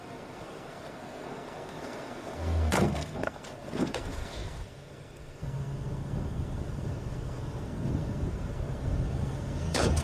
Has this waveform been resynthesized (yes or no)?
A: yes